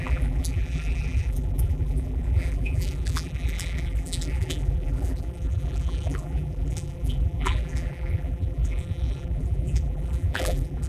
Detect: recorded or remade remade